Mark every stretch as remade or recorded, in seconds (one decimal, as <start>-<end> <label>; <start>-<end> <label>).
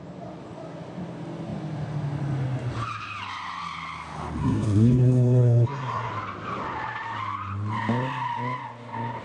0.0-4.4 recorded; 4.4-6.1 remade; 6.1-9.2 recorded